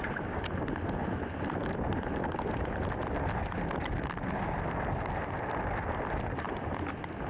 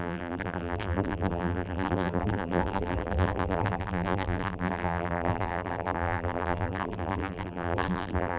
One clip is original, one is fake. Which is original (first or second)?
first